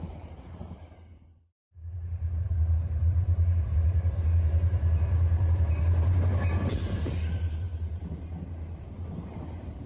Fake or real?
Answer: fake